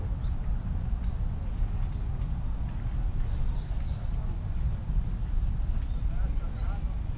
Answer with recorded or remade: recorded